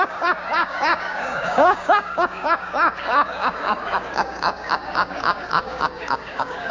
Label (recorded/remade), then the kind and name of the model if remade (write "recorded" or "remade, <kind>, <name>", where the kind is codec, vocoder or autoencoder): remade, codec, DAC